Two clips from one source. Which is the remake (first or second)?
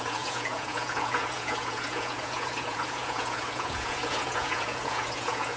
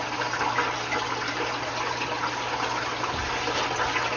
first